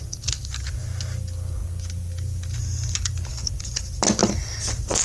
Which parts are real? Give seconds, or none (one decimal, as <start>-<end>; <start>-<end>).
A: 0.0-5.0